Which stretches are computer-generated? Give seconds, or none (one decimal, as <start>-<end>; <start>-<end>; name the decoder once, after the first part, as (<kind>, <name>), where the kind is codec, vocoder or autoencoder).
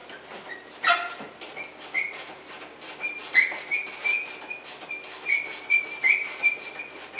none